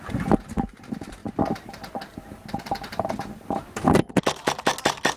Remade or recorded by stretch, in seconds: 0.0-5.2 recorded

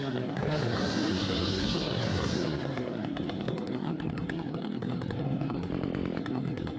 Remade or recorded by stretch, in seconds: 0.0-5.7 remade; 5.7-6.2 recorded; 6.2-6.8 remade

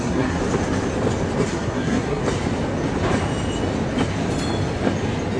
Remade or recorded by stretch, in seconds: 0.0-0.4 remade; 0.4-1.5 recorded; 1.5-2.2 remade; 2.2-5.4 recorded

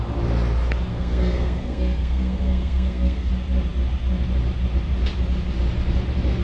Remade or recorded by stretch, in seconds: 0.0-0.9 recorded; 0.9-3.3 remade; 3.3-6.4 recorded

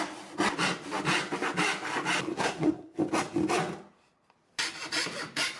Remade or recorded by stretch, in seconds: 0.0-2.3 recorded; 2.3-3.0 remade; 3.0-5.6 recorded